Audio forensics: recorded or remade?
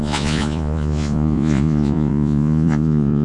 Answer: remade